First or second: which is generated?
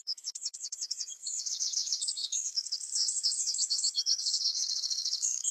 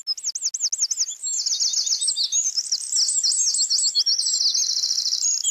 first